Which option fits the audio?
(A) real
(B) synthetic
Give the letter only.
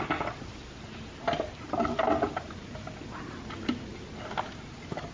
A